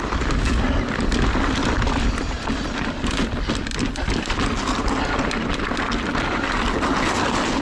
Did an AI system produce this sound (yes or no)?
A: no